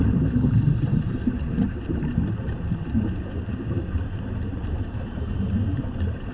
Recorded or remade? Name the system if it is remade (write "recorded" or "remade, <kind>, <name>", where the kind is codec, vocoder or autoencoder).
remade, vocoder, BigVGAN v2